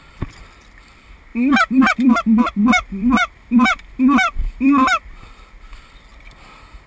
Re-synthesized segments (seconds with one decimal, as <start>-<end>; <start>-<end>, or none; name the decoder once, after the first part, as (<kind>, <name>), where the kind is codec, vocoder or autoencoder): 1.3-2.1 (vocoder, BigVGAN v2); 2.6-5.8